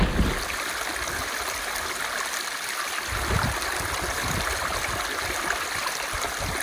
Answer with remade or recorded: recorded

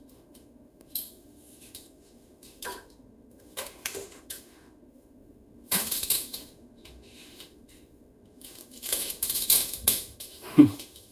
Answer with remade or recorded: remade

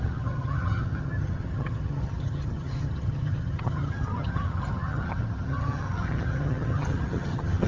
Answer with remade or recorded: remade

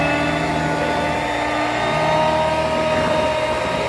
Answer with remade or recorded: recorded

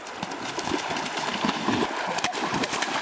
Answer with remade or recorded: recorded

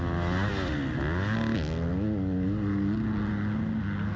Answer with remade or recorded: recorded